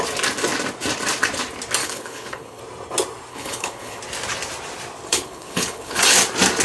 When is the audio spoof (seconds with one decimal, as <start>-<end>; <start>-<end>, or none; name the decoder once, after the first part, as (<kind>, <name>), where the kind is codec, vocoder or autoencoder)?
1.8-2.6 (codec, HILCodec); 3.3-4.0; 5.1-6.0